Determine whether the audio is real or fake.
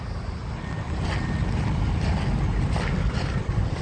real